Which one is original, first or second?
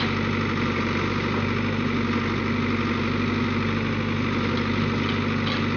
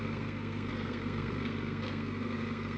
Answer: first